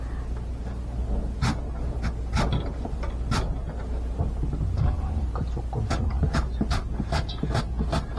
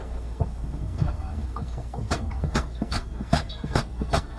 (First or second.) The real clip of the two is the first